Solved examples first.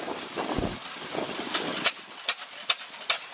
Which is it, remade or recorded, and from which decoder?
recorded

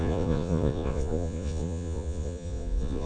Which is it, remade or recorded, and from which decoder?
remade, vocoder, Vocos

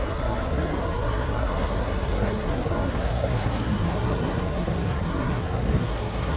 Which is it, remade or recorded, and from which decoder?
remade, codec, SNAC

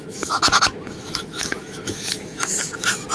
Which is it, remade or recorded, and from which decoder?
remade, autoencoder, DAC-VAE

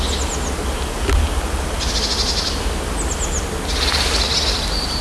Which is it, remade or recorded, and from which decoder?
recorded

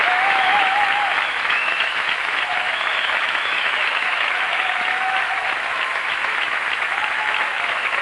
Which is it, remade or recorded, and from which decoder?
remade, autoencoder, DAC-VAE